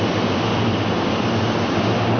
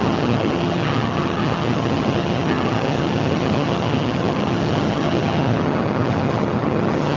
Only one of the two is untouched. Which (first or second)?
first